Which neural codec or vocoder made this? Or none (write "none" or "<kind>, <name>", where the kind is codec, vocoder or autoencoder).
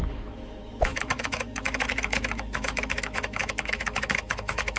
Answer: autoencoder, DAC-VAE